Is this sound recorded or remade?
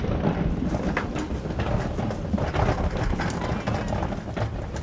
recorded